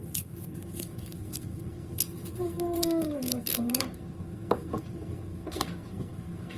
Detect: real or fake fake